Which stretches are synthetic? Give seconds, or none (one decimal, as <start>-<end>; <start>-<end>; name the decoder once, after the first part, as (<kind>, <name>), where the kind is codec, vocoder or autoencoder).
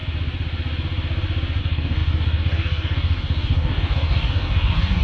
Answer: 1.6-5.0 (codec, DAC)